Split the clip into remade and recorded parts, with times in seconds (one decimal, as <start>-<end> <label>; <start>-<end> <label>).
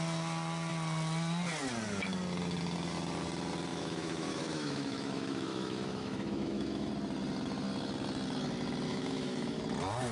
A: 0.0-3.7 recorded; 3.7-6.9 remade; 6.9-8.9 recorded; 8.9-9.6 remade; 9.6-10.1 recorded